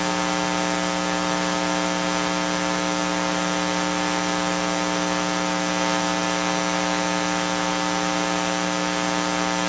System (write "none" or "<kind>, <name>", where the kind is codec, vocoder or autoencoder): none